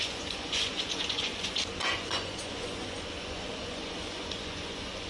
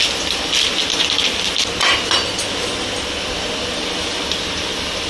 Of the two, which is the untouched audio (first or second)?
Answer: second